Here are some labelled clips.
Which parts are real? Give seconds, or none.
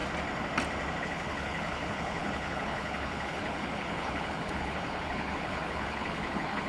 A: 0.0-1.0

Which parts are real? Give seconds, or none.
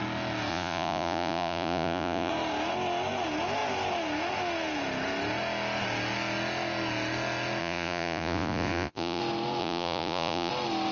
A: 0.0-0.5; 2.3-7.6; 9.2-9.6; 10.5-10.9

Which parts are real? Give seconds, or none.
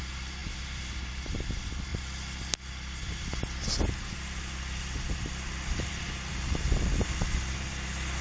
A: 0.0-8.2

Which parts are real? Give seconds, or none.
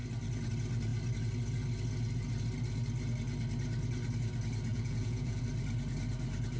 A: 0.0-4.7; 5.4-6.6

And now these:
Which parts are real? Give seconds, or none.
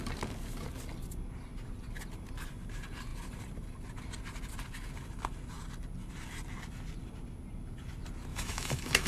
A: 0.0-8.3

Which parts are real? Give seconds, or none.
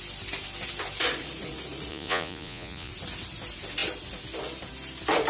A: 0.0-1.9; 2.9-5.3